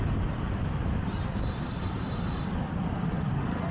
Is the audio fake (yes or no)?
no